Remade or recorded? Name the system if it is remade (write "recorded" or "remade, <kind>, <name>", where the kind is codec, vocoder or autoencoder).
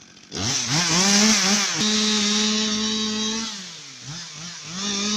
recorded